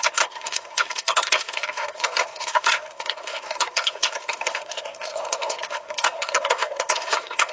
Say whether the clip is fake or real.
fake